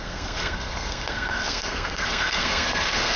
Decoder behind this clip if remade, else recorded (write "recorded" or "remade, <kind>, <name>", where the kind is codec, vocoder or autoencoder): remade, codec, SNAC